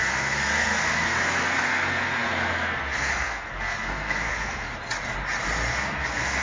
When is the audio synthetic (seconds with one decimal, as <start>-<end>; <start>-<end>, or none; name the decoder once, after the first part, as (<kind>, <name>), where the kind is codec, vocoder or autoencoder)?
0.0-4.7 (codec, SNAC); 5.7-6.4